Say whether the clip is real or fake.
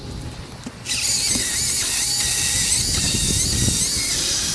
real